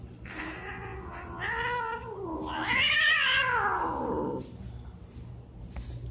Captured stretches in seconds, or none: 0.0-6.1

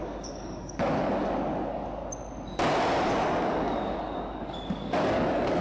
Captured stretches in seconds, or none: 2.0-3.4

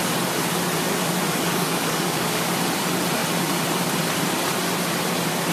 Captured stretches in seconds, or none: 0.0-1.5; 2.5-5.5

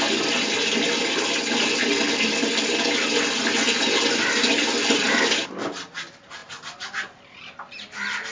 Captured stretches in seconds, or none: 0.0-8.3

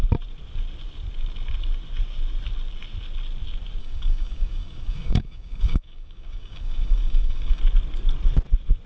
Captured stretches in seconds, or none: 0.0-3.8; 7.6-8.9